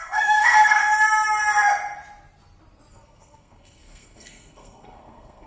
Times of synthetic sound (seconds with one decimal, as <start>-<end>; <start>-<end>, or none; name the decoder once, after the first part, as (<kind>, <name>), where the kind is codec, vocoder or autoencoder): 0.0-0.8 (codec, SNAC); 2.9-5.5